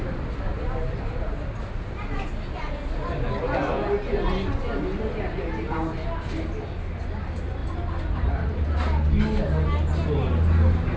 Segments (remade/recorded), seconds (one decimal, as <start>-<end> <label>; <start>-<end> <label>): 0.0-11.0 recorded